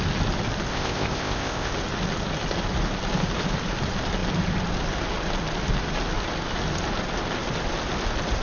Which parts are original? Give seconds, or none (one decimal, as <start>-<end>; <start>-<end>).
0.0-0.7; 1.7-8.4